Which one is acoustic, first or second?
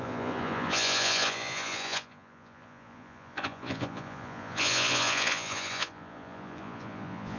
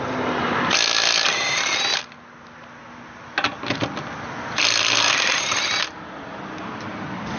second